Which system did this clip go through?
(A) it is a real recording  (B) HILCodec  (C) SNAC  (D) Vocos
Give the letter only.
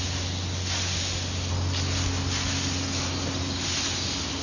A